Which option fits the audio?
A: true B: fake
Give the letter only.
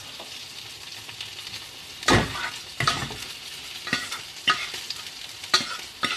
B